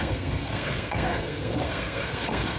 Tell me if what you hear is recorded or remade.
remade